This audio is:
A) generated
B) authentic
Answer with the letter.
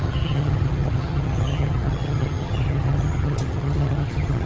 A